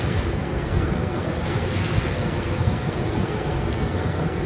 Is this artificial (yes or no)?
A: yes